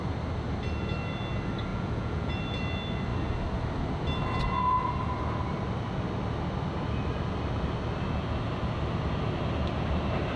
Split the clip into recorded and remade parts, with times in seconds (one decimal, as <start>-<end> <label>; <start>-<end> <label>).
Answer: 0.0-1.7 recorded; 1.7-2.3 remade; 2.3-10.4 recorded